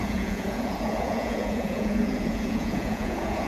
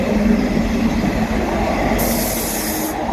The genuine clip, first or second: second